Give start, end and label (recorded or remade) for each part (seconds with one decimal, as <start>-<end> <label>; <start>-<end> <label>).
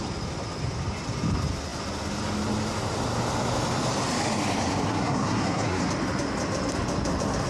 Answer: 0.0-4.9 recorded; 4.9-5.9 remade; 5.9-7.5 recorded